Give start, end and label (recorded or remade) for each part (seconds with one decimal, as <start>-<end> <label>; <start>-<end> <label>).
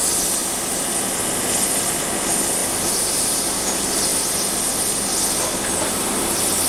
0.0-0.4 recorded; 0.4-0.9 remade; 0.9-2.6 recorded; 2.6-3.3 remade; 3.3-6.7 recorded